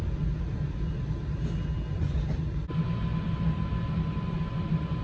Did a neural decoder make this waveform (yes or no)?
no